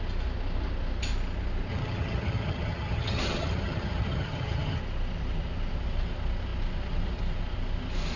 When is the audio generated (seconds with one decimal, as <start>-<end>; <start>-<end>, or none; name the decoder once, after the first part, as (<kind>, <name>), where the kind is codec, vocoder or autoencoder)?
1.7-4.8 (vocoder, HiFi-GAN)